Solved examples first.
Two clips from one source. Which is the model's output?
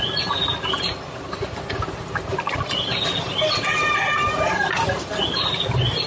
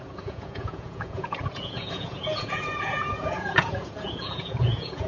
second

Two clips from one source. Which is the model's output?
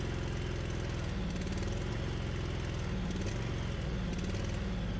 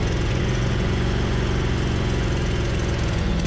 second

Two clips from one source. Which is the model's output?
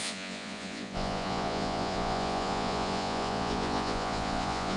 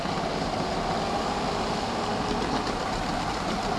first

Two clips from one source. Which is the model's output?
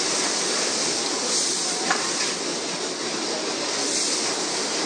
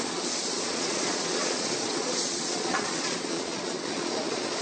second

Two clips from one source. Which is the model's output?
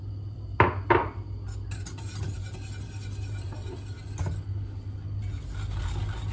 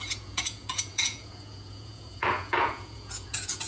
second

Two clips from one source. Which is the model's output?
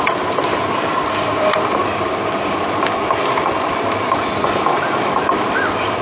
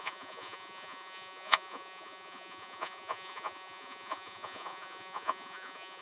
second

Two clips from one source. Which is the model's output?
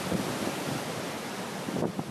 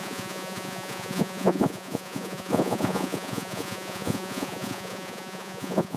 second